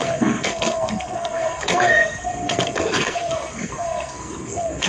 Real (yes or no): no